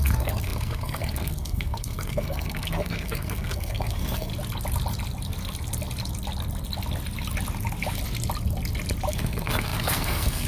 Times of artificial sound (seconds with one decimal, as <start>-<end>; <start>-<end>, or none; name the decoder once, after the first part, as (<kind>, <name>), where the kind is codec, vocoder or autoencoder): 0.0-4.3 (codec, SNAC); 9.1-10.5